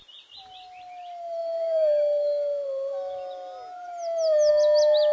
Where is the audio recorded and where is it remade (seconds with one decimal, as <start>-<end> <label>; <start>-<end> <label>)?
0.0-5.1 recorded